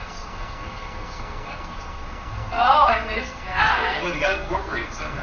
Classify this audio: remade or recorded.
remade